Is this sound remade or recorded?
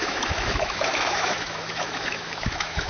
remade